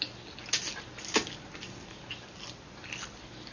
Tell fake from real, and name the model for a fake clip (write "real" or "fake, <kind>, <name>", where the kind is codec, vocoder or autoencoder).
real